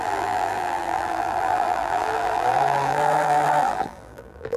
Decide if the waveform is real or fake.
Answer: fake